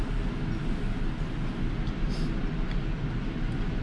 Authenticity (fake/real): real